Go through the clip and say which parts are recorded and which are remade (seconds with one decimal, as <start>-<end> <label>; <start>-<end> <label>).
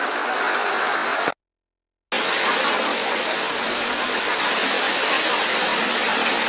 0.0-6.5 recorded